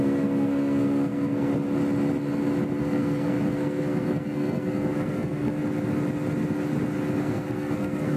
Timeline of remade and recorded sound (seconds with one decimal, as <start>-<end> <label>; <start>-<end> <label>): 0.0-1.5 remade; 1.5-2.8 recorded; 2.8-5.6 remade; 5.6-7.2 recorded; 7.2-8.2 remade